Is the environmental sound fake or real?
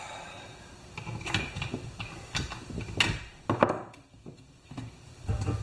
real